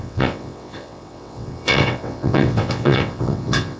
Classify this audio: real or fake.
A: fake